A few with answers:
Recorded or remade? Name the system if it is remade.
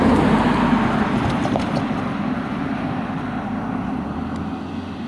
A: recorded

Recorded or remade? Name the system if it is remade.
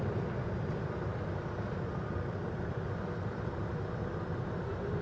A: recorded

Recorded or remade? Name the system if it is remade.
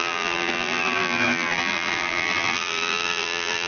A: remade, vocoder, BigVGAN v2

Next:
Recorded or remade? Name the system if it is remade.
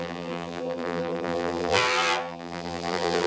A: remade, vocoder, BigVGAN v2